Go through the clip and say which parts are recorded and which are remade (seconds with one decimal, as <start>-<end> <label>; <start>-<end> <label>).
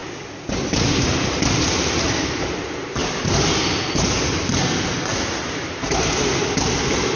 0.0-7.2 recorded